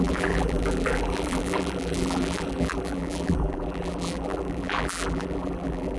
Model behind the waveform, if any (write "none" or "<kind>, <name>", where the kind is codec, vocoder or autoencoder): vocoder, BigVGAN v2